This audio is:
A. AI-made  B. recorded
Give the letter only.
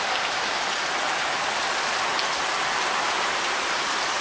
B